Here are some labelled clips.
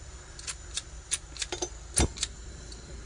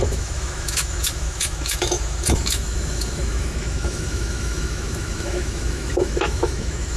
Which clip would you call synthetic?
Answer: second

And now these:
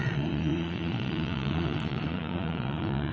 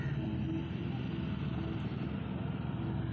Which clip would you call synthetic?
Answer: first